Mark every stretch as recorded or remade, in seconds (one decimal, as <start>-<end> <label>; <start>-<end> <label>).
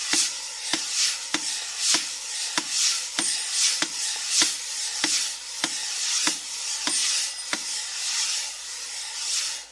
0.0-0.8 remade; 0.8-2.9 recorded; 2.9-4.5 remade; 4.5-7.0 recorded; 7.0-8.6 remade; 8.6-9.7 recorded